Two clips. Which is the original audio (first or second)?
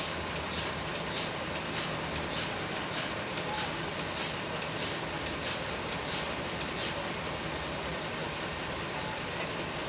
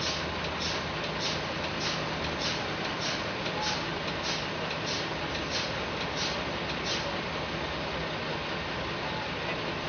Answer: second